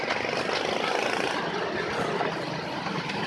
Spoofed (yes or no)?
no